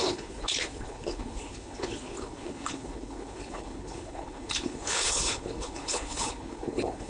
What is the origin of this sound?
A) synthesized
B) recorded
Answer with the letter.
A